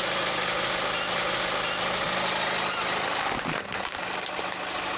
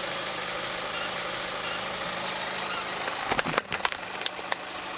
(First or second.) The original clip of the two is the first